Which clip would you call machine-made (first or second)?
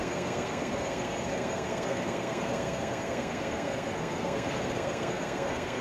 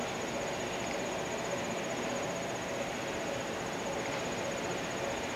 first